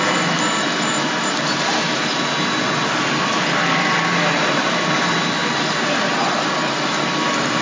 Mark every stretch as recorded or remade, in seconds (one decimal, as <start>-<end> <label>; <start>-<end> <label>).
0.0-7.6 remade